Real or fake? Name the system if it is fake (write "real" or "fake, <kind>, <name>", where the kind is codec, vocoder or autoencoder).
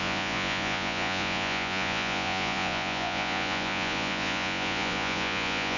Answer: fake, vocoder, Vocos